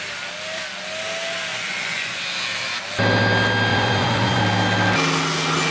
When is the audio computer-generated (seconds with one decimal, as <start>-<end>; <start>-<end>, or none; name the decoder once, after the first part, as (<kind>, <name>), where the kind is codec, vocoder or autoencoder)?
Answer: 1.5-2.2 (vocoder, Vocos); 3.7-4.4